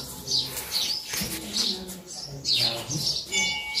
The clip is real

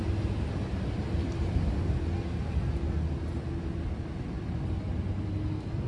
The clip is real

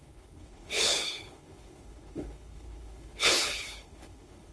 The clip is fake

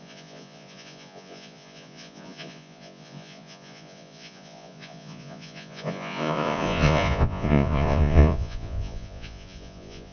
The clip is fake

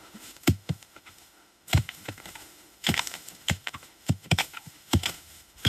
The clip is fake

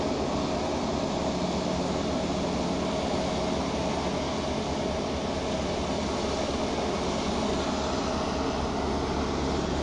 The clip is real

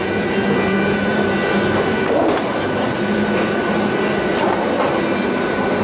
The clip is real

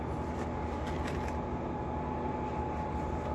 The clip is real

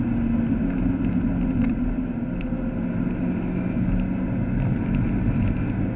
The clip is real